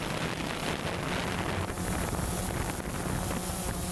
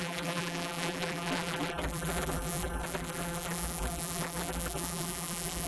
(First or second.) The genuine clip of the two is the first